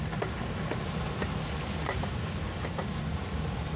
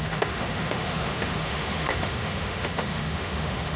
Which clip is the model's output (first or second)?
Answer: second